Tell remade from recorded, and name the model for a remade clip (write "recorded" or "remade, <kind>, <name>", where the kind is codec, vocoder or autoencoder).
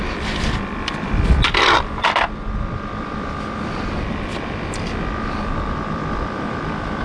remade, vocoder, BigVGAN v2